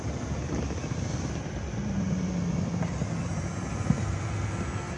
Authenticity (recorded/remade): recorded